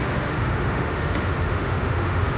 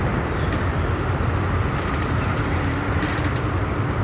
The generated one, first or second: first